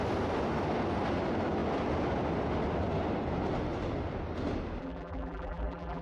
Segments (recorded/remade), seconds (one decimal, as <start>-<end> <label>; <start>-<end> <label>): 0.0-4.8 recorded; 4.8-6.0 remade